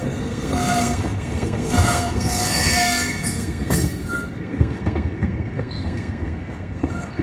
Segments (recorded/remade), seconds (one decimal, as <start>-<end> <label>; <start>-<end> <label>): 0.0-7.2 remade

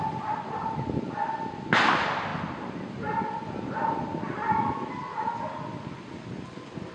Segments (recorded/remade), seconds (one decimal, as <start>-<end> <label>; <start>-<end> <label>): 0.0-6.9 recorded

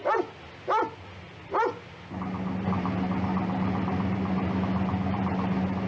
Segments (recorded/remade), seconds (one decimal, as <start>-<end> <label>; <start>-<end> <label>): 0.0-5.9 recorded

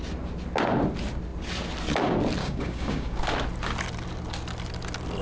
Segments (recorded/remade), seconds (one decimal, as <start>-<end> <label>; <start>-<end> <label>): 0.0-2.4 recorded; 2.4-3.2 remade; 3.2-5.2 recorded

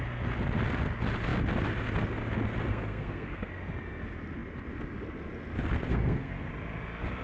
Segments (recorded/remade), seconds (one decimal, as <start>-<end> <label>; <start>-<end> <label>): 0.0-2.7 recorded; 2.7-3.5 remade; 3.5-5.9 recorded; 5.9-6.5 remade; 6.5-7.2 recorded

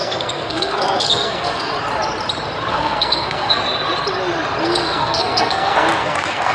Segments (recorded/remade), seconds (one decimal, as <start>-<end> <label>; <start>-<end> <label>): 0.0-1.7 remade; 1.7-2.7 recorded; 2.7-3.6 remade; 3.6-4.6 recorded; 4.6-6.5 remade